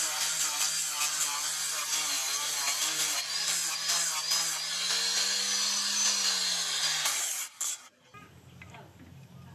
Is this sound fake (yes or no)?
no